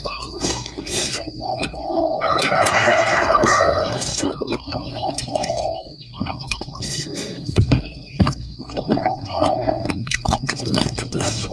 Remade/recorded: remade